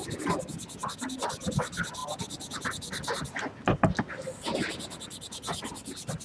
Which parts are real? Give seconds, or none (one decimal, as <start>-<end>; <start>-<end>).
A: 0.0-6.2